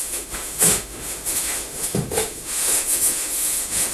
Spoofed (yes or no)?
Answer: yes